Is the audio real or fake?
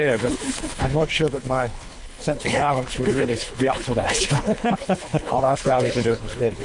fake